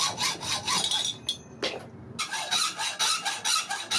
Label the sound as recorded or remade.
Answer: recorded